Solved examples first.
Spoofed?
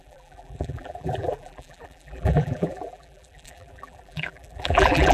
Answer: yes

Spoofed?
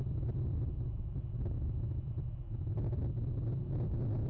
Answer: no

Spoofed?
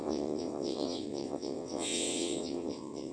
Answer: yes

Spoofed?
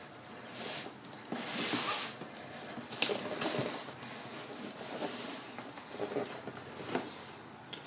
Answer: no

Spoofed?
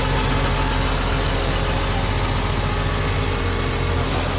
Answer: no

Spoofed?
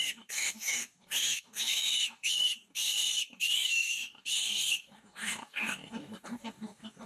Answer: yes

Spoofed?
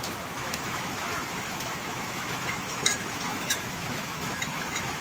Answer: yes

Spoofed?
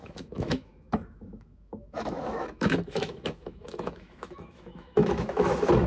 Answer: yes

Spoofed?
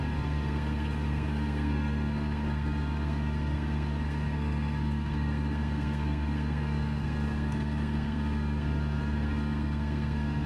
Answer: yes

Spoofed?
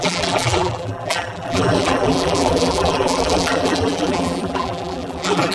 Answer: yes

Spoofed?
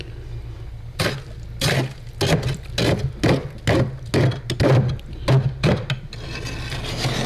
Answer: no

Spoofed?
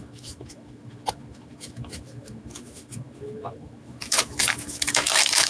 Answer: yes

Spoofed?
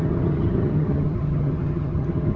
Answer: yes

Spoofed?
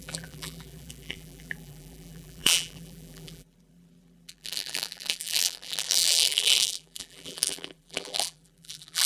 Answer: yes